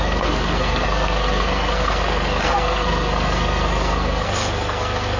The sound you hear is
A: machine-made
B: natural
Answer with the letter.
A